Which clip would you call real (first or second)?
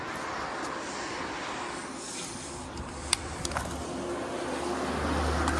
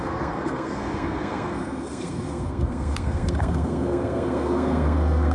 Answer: first